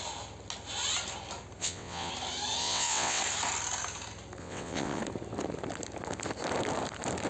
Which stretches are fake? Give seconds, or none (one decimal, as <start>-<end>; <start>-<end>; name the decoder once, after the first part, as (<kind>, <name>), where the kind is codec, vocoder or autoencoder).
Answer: 1.6-2.1 (vocoder, WaveNeXt); 2.6-3.2; 4.4-5.0